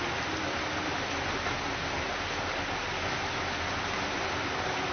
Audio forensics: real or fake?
real